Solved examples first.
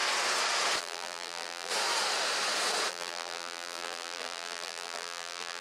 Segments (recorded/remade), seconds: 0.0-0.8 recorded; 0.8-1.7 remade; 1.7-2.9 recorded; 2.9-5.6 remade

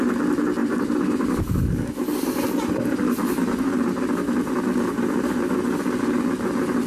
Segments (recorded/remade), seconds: 0.0-0.6 recorded; 0.6-1.2 remade; 1.2-6.9 recorded

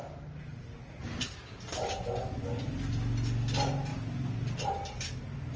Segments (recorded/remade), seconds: 0.0-0.5 recorded; 0.5-2.0 remade; 2.0-5.6 recorded

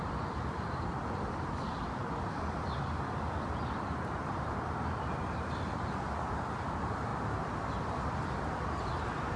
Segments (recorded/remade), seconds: 0.0-7.1 remade; 7.1-8.1 recorded; 8.1-9.4 remade

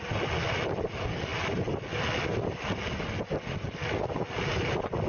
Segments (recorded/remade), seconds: 0.0-5.1 recorded